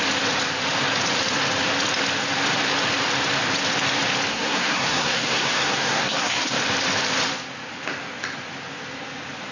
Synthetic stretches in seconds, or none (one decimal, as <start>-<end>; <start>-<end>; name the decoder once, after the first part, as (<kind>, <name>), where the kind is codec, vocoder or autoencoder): 4.3-6.6 (codec, SNAC)